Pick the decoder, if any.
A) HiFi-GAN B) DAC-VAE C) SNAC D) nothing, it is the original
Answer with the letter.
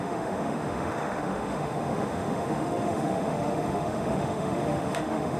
B